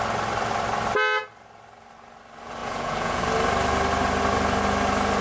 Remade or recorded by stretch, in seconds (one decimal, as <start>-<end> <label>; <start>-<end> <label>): 0.0-2.6 recorded; 2.6-3.2 remade; 3.2-5.2 recorded